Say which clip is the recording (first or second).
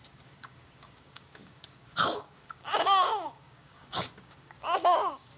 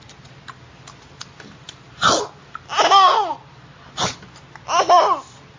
second